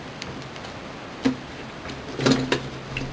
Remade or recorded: recorded